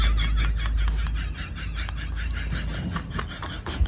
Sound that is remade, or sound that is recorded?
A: recorded